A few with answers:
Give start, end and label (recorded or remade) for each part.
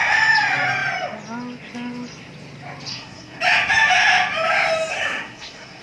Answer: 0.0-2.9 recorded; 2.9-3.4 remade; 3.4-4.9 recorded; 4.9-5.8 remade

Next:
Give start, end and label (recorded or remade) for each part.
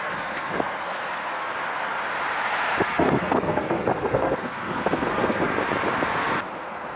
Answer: 0.0-1.5 remade; 1.5-2.8 recorded; 2.8-5.5 remade; 5.5-6.6 recorded; 6.6-7.0 remade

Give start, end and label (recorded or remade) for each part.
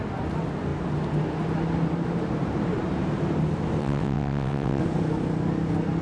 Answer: 0.0-3.8 recorded; 3.8-4.8 remade; 4.8-6.0 recorded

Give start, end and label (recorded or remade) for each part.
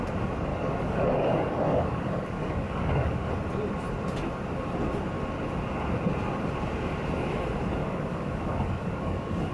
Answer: 0.0-0.5 recorded; 0.5-3.3 remade; 3.3-7.8 recorded; 7.8-9.5 remade